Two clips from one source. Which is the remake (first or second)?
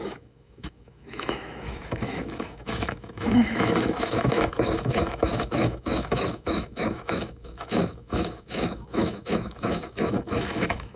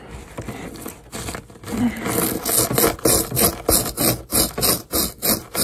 first